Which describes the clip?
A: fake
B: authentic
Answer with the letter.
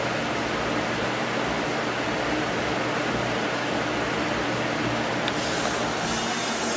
B